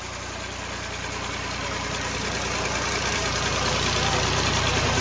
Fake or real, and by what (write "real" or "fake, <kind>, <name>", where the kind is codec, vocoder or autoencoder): real